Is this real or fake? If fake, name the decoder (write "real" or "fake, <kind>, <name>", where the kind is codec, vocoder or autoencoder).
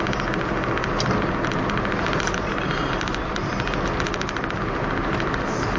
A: real